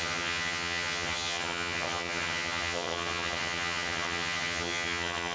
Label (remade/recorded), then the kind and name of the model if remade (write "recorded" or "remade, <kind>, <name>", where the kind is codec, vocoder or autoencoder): remade, vocoder, HiFi-GAN